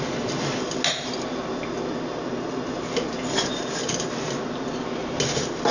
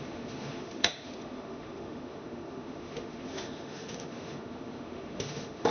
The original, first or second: first